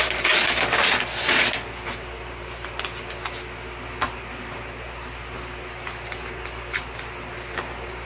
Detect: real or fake real